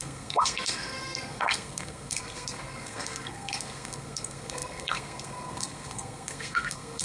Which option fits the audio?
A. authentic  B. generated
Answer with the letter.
B